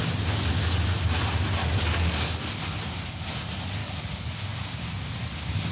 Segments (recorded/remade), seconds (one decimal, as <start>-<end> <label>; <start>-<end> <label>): 0.0-1.6 recorded; 1.6-2.5 remade; 2.5-3.8 recorded; 3.8-4.6 remade; 4.6-5.7 recorded